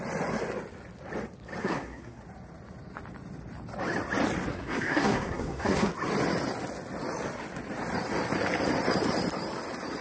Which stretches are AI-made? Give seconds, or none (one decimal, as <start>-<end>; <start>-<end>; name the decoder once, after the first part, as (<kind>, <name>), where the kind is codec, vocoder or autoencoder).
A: 1.6-2.2 (codec, SNAC); 4.5-5.9